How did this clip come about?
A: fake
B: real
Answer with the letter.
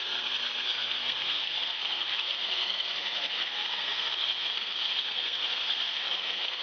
A